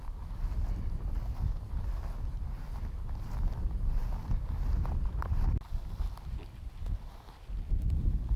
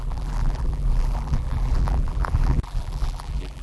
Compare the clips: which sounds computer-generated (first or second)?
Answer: second